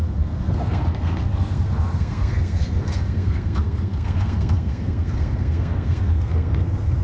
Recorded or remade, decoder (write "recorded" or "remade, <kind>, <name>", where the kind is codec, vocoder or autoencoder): remade, codec, SNAC